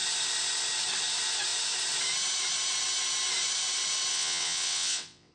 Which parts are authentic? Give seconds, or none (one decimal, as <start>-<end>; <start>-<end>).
0.0-4.1